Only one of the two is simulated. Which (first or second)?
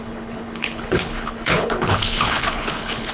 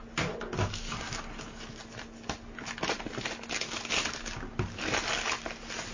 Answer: first